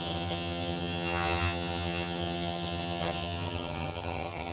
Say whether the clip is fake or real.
fake